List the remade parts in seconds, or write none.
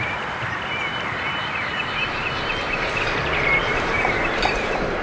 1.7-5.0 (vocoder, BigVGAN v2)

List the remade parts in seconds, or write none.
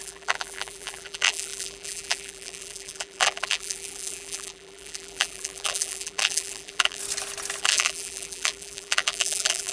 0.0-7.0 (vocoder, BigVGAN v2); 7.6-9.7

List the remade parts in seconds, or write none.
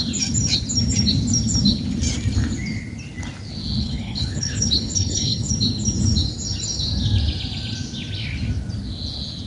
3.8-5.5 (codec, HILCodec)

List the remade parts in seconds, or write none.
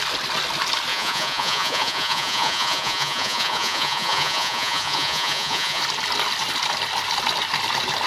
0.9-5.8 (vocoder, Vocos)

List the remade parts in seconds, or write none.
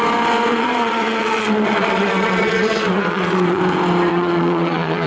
0.5-3.6 (vocoder, Vocos); 4.1-5.1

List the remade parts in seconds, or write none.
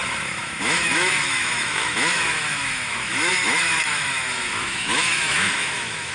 0.0-6.1 (autoencoder, DAC-VAE)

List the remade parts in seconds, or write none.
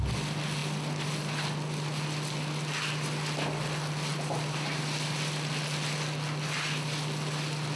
none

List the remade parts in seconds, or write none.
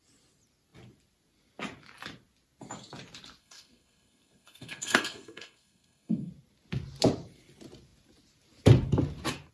3.4-6.3 (codec, SNAC)